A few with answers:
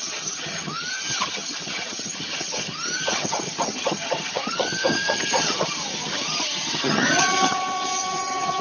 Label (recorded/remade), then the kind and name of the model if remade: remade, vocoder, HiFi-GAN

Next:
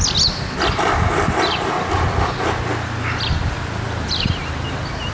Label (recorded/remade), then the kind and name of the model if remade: recorded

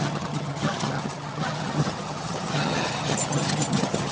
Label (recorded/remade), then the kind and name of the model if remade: remade, vocoder, HiFi-GAN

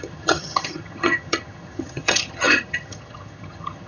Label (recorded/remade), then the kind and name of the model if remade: remade, vocoder, HiFi-GAN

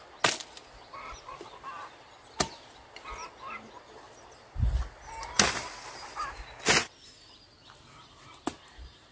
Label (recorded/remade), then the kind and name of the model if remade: recorded